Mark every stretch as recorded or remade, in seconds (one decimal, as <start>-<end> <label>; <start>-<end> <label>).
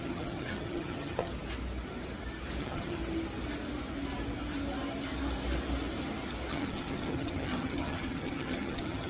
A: 0.0-1.3 remade; 1.3-2.6 recorded; 2.6-3.0 remade; 3.0-6.5 recorded; 6.5-9.1 remade